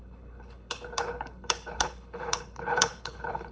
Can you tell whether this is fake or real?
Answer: fake